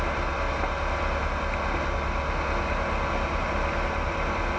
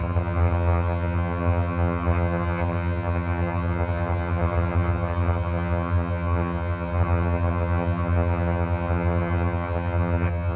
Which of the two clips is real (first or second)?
first